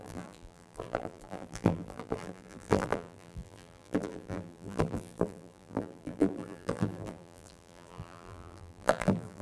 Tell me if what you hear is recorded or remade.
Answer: remade